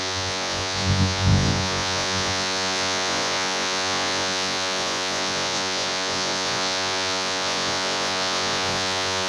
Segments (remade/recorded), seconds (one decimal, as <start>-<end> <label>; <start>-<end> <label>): 0.0-9.3 remade